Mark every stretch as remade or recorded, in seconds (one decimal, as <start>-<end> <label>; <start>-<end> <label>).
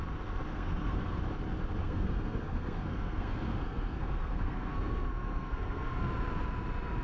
0.0-0.5 recorded; 0.5-1.2 remade; 1.2-1.8 recorded; 1.8-6.0 remade; 6.0-7.0 recorded